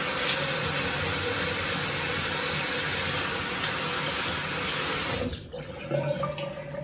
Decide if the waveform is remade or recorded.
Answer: recorded